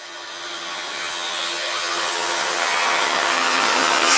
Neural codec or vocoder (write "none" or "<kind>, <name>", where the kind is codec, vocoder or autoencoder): vocoder, HiFi-GAN